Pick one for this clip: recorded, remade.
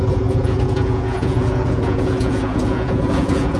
remade